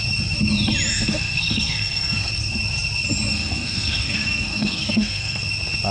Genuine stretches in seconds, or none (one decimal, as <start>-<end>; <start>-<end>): 0.0-0.9; 2.3-3.3; 5.4-5.9